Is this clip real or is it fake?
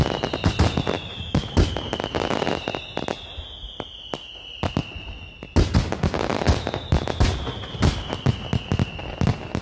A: real